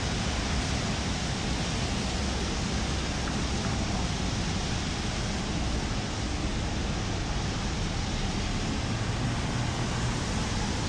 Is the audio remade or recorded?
recorded